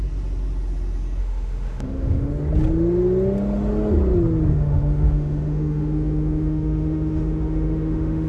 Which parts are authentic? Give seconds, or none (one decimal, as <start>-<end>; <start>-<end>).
0.0-1.2; 2.3-4.5